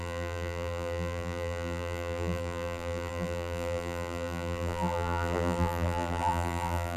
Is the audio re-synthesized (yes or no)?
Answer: yes